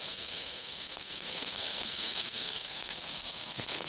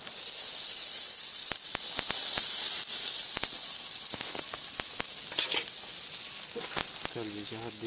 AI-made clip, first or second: first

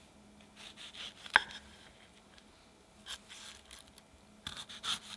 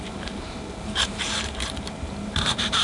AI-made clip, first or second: second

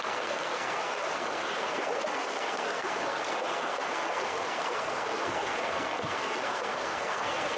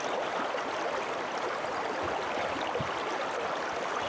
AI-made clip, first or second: first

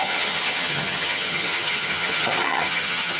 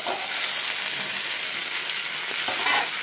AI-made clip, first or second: first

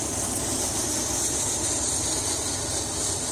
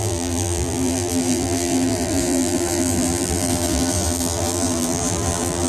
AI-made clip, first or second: second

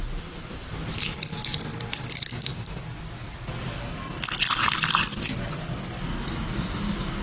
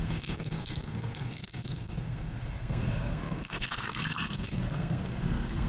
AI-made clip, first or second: second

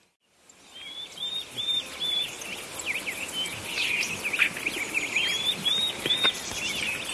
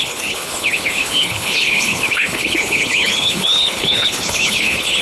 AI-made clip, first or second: second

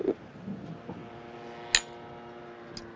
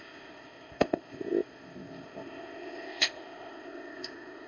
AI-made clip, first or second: second